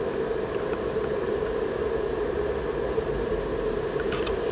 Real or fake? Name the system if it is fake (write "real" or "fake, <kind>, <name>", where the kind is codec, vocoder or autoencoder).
real